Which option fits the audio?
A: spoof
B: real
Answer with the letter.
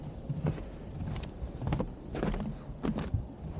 B